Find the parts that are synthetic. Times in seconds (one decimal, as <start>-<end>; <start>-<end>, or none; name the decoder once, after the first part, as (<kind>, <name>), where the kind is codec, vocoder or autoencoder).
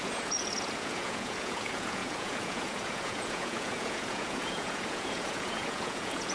0.0-6.3 (vocoder, Vocos)